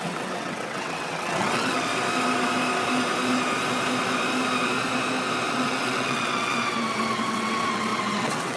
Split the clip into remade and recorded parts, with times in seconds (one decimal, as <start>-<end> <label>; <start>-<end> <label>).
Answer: 0.0-1.9 remade; 1.9-5.5 recorded; 5.5-8.6 remade